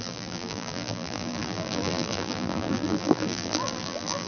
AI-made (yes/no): yes